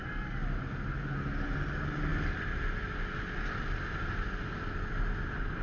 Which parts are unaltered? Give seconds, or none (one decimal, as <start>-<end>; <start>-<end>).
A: 0.0-5.6